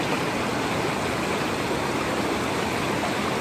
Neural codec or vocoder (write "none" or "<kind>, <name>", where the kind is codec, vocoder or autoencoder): none